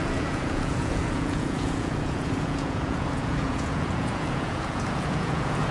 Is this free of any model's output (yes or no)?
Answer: no